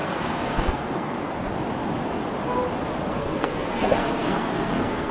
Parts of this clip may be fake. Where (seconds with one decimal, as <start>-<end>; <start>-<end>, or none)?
0.0-1.3; 3.1-5.1